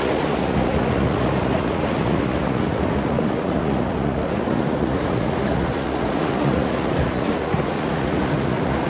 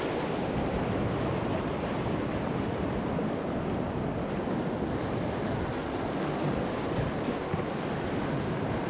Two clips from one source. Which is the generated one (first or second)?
first